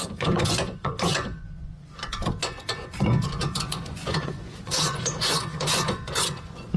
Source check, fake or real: fake